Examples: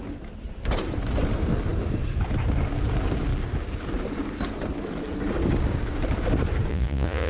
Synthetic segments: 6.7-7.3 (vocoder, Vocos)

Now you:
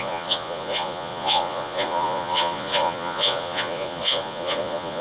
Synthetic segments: 0.0-5.0 (vocoder, Vocos)

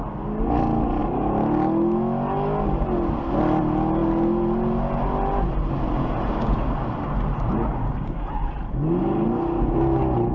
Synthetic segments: none

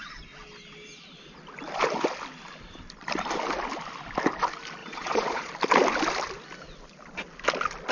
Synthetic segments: 4.8-5.5 (vocoder, Vocos)

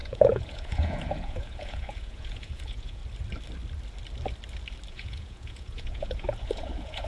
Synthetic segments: 0.0-3.0 (vocoder, Vocos); 4.9-7.1